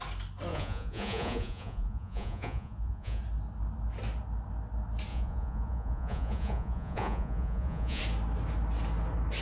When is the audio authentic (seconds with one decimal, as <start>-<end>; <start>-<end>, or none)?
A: 0.0-0.5; 3.2-5.1; 8.0-9.4